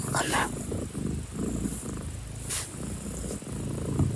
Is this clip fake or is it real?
real